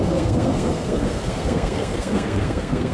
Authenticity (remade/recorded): remade